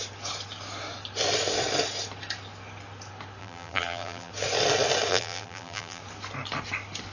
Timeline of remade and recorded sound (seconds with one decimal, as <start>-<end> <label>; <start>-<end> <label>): 0.0-3.4 recorded; 3.4-4.3 remade; 4.3-5.1 recorded; 5.1-6.0 remade; 6.0-7.1 recorded